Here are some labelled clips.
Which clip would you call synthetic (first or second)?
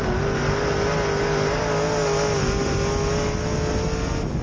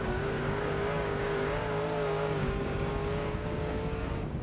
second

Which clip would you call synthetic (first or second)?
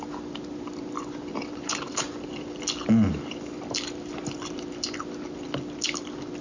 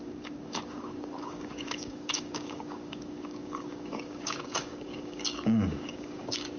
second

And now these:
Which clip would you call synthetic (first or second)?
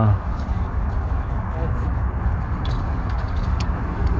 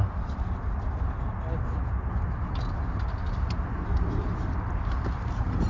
first